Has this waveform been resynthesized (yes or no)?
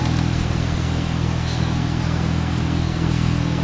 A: yes